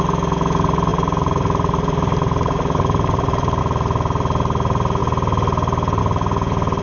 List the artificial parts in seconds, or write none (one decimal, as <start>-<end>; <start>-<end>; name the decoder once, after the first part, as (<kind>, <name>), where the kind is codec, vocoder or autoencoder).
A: 0.9-3.6 (vocoder, BigVGAN v2)